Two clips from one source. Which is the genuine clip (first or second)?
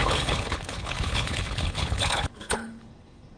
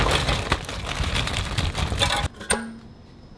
second